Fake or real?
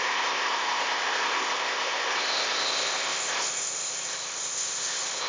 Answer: fake